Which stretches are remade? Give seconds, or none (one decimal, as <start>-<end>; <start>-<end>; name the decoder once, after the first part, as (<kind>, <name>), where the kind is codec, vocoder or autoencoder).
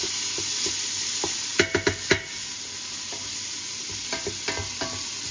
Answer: none